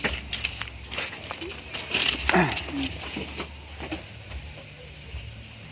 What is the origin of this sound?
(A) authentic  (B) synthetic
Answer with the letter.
A